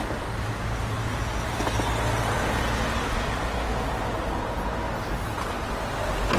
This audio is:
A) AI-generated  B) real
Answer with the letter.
B